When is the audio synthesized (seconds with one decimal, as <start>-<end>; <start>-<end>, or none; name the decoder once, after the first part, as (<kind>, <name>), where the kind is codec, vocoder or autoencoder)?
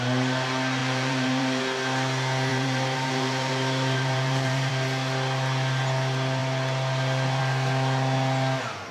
0.8-1.6 (vocoder, BigVGAN v2); 2.5-4.7